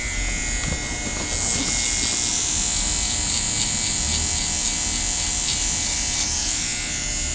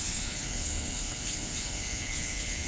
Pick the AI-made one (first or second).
second